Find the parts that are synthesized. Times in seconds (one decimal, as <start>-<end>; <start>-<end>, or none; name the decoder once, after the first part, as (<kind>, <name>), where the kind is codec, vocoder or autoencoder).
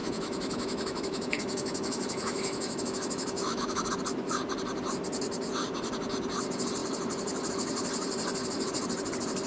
0.0-3.9 (autoencoder, DAC-VAE)